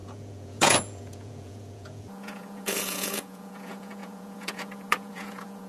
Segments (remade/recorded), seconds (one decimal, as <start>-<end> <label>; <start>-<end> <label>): 0.0-5.7 remade